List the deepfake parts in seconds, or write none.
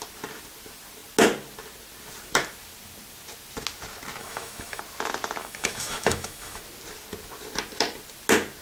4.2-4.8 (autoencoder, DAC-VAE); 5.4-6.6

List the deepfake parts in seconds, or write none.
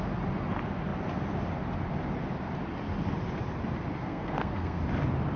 4.0-4.8 (codec, SNAC)